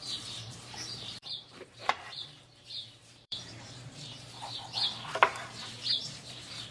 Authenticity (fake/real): fake